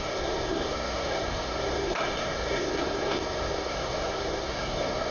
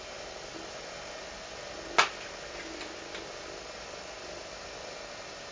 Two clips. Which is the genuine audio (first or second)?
second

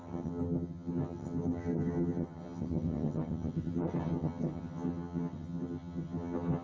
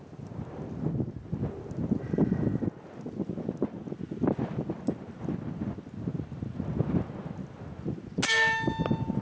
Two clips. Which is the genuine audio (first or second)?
second